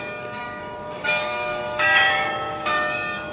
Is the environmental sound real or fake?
fake